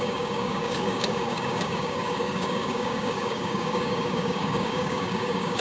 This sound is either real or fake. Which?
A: fake